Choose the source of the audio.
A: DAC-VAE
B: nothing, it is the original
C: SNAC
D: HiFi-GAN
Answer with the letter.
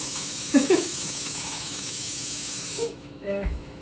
A